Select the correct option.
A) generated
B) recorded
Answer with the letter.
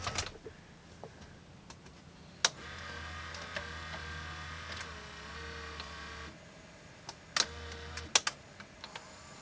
B